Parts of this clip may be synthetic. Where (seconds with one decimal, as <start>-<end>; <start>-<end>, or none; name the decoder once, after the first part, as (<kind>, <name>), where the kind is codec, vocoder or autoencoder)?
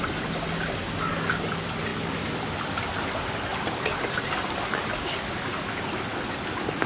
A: 3.5-5.2 (vocoder, BigVGAN v2)